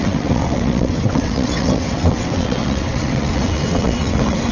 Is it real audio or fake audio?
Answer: fake